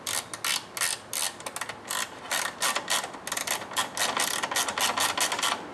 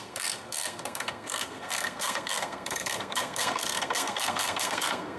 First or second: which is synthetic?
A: second